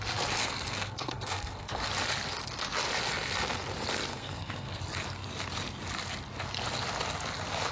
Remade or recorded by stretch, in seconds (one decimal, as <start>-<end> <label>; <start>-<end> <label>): 0.0-0.4 recorded; 0.4-1.9 remade; 1.9-4.1 recorded; 4.1-4.8 remade; 4.8-7.7 recorded